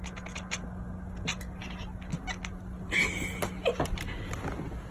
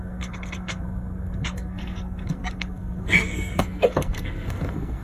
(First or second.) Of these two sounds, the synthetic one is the second